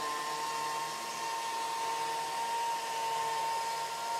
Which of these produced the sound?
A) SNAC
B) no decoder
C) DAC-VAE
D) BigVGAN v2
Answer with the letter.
B